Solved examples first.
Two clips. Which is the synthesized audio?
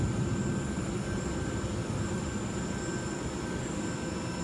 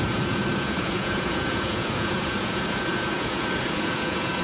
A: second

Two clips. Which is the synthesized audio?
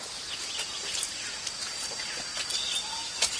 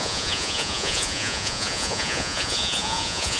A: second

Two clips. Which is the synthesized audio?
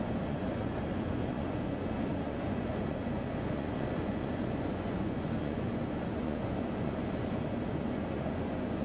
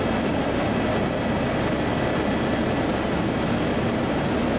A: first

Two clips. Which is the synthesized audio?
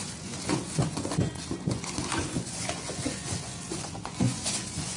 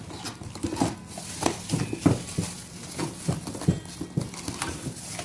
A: first